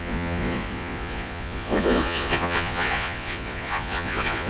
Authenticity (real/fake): fake